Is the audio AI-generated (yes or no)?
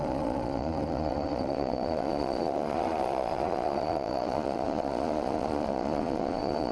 yes